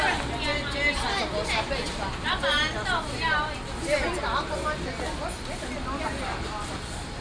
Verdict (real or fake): real